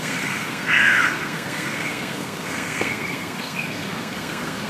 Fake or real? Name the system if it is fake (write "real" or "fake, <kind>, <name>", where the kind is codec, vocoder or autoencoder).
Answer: fake, codec, SNAC